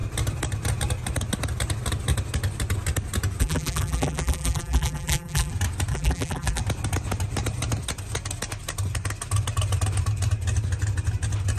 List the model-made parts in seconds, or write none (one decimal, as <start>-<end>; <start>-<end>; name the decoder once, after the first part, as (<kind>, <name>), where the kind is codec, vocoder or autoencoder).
3.4-5.5 (vocoder, BigVGAN v2); 5.9-6.6